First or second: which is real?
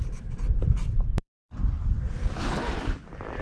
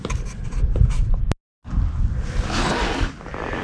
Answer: second